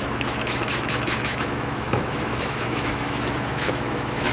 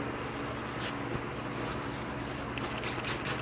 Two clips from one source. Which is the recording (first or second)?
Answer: second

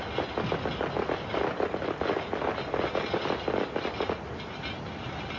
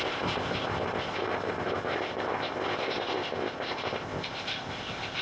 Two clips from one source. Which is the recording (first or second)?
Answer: first